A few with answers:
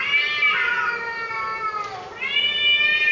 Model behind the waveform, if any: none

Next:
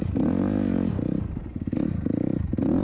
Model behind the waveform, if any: none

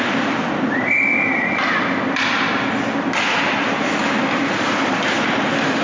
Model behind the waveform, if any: none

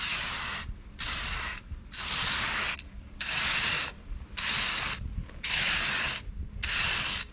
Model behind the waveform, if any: none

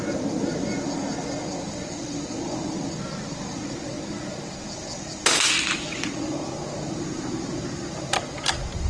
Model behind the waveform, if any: none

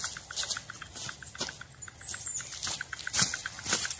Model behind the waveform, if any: none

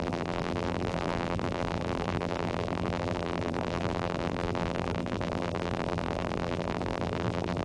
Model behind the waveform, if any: vocoder, BigVGAN v2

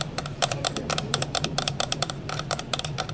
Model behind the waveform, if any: vocoder, BigVGAN v2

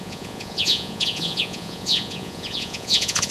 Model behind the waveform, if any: vocoder, Vocos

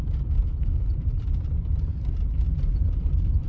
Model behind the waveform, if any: none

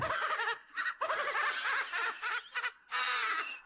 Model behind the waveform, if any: none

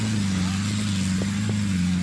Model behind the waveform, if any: none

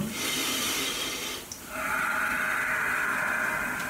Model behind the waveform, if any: none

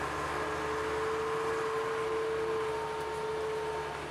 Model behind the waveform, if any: none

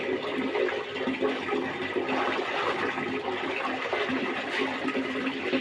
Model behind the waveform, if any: none